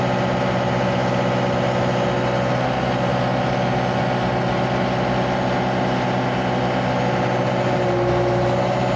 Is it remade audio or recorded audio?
recorded